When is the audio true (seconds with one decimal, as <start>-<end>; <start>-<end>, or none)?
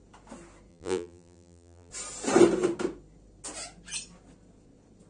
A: 0.0-0.7; 1.9-5.1